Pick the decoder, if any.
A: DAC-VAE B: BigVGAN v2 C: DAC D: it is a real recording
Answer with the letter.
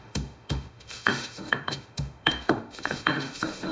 A